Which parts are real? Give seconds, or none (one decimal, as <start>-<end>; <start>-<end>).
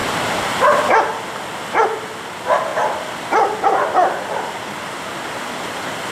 0.0-2.7